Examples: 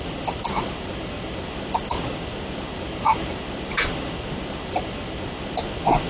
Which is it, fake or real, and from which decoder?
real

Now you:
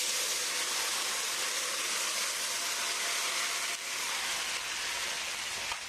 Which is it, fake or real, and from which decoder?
real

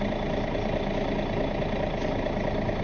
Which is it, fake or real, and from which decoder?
real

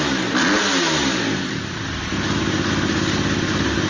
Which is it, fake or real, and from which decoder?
real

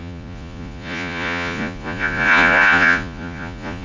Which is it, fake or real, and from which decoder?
fake, vocoder, Vocos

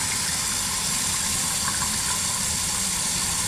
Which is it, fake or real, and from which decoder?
real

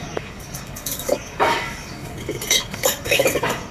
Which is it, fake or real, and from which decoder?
fake, codec, DAC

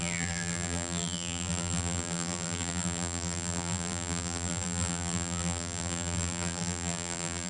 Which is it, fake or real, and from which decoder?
fake, vocoder, BigVGAN v2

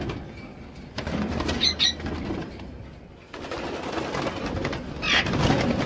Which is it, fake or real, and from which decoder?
real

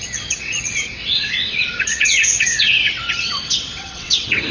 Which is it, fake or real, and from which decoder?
fake, vocoder, WaveNeXt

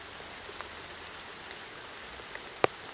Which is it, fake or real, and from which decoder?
real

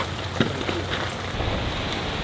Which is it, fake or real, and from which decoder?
real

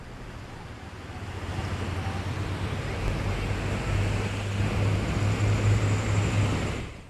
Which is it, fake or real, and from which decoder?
real